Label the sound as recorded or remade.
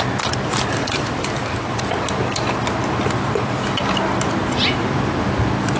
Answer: recorded